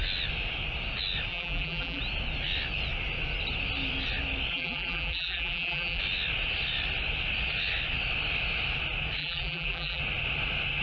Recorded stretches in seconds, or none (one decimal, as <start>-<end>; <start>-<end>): 0.0-1.3; 2.0-4.5; 6.0-9.2; 10.0-10.8